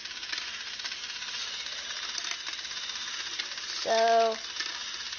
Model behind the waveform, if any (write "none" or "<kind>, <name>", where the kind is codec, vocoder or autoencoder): none